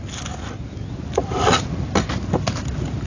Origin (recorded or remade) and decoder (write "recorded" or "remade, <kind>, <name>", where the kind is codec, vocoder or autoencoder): recorded